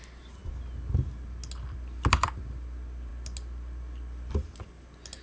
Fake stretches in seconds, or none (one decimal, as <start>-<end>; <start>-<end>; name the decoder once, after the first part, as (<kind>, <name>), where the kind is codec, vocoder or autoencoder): none